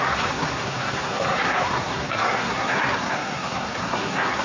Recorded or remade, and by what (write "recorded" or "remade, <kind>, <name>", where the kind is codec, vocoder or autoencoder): remade, codec, SNAC